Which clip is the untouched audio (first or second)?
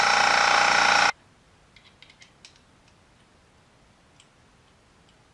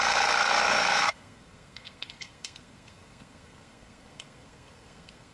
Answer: first